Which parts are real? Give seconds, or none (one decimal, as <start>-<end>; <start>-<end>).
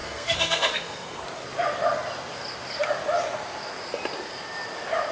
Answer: 1.2-5.1